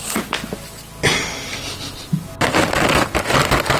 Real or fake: real